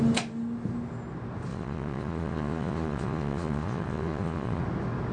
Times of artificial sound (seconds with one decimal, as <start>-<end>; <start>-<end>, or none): 1.5-4.6